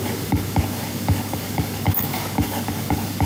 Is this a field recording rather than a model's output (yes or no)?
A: no